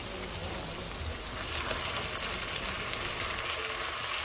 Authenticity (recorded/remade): recorded